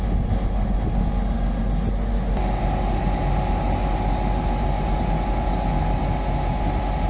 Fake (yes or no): no